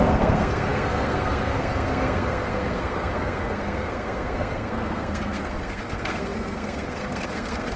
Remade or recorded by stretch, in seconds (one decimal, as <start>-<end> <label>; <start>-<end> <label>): 0.0-7.8 remade